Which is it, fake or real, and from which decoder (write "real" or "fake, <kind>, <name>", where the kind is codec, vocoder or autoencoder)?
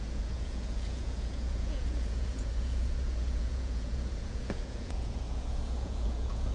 fake, vocoder, Vocos